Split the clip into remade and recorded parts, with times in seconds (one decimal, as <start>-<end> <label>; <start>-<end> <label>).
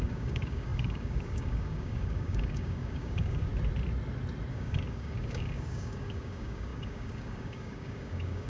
0.0-3.5 remade; 3.5-4.5 recorded; 4.5-8.5 remade